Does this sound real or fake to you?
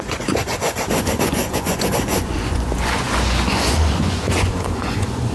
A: fake